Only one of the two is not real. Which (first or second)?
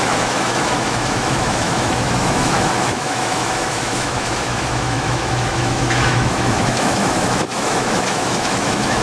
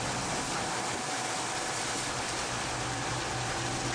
first